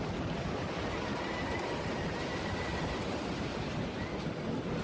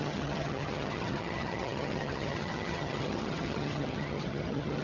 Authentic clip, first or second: first